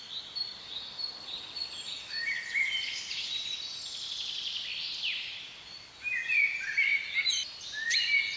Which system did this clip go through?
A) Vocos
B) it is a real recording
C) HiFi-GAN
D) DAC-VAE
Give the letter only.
B